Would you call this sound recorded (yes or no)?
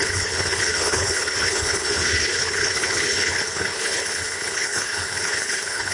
no